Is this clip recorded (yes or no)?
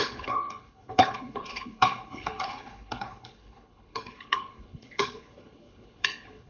no